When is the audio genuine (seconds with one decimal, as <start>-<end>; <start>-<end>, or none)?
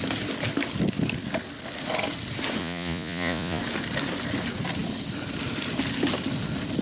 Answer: 0.0-2.6; 3.6-6.8